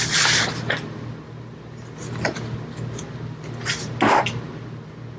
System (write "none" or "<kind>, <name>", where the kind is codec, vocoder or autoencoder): none